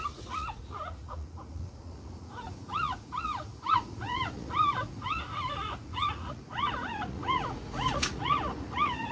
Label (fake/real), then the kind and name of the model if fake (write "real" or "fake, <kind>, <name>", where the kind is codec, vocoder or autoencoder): fake, vocoder, Vocos